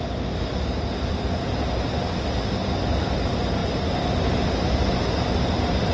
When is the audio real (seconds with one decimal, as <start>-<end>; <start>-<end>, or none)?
0.0-5.9